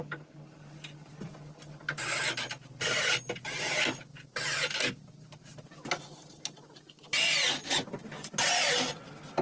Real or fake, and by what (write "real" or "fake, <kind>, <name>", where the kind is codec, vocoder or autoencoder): real